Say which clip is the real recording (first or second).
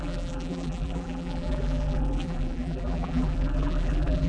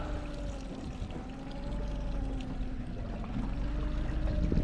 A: second